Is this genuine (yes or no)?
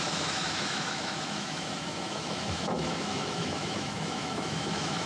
no